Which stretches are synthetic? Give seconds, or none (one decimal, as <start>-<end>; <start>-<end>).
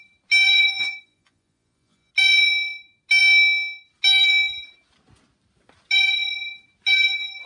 0.4-2.1